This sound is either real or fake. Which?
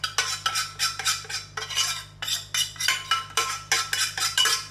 real